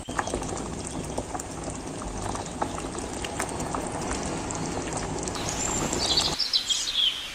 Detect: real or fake real